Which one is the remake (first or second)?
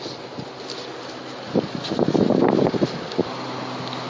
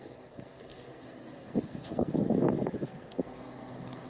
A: second